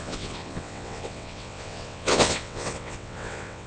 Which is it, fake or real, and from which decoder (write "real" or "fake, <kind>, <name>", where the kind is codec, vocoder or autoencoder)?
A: fake, vocoder, WaveNeXt